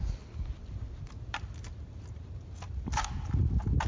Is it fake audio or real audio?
real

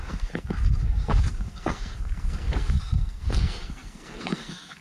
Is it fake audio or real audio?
fake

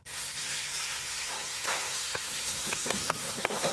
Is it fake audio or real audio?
fake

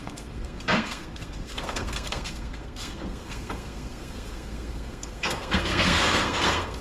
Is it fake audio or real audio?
fake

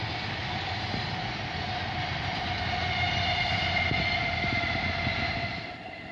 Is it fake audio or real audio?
real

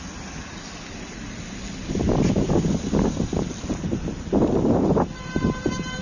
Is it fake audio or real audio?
real